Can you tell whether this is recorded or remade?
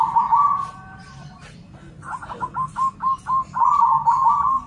recorded